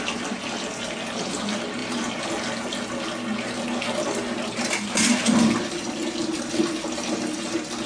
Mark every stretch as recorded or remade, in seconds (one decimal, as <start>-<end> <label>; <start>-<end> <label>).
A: 0.0-7.9 recorded